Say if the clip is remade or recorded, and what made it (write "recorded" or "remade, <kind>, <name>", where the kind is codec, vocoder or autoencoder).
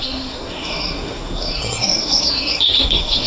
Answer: remade, codec, SNAC